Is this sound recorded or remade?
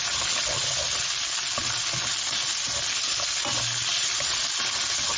recorded